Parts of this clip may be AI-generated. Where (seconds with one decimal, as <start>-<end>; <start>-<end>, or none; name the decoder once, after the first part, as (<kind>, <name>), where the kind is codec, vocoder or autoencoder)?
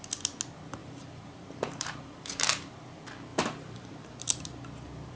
0.8-2.3 (vocoder, BigVGAN v2); 3.3-4.2